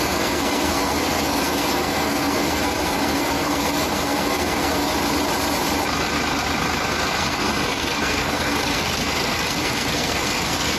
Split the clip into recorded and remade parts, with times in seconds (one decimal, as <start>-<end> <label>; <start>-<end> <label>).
0.0-4.9 remade; 4.9-6.8 recorded; 6.8-10.8 remade